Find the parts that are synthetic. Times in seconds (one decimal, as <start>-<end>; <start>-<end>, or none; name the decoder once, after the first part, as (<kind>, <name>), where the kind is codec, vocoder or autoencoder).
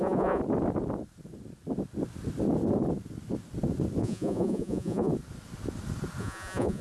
0.0-0.4 (vocoder, Vocos); 4.0-5.1; 6.2-6.8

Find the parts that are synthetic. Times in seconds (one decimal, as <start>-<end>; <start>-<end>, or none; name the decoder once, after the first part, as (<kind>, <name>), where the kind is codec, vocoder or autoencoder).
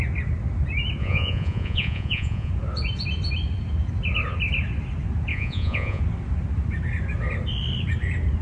1.0-2.5 (vocoder, Vocos); 5.3-6.0